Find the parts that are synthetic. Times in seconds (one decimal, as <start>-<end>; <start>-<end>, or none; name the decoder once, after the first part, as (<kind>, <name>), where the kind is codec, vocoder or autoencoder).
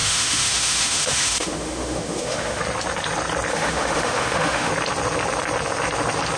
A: 0.0-2.6 (autoencoder, DAC-VAE); 3.5-4.7